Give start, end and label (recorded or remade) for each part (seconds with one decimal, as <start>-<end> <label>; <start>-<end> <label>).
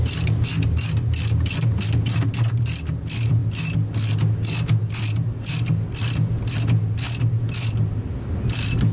0.0-8.9 recorded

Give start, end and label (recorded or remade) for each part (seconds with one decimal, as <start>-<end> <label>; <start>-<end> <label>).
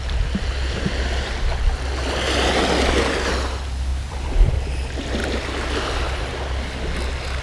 0.0-3.9 recorded; 3.9-4.5 remade; 4.5-7.4 recorded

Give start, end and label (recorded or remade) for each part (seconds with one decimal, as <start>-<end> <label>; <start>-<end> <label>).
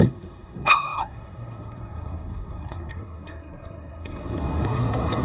0.0-5.2 remade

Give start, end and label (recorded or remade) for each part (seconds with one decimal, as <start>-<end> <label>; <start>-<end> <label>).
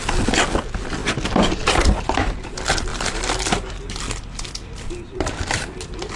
0.0-2.9 recorded; 2.9-4.4 remade; 4.4-6.2 recorded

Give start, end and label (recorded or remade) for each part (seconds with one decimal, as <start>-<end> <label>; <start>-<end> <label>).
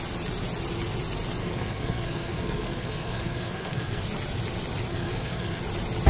0.0-1.4 recorded; 1.4-4.0 remade; 4.0-4.9 recorded; 4.9-5.6 remade; 5.6-6.1 recorded